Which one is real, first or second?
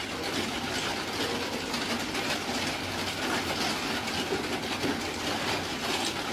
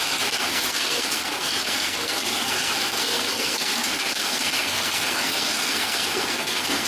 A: first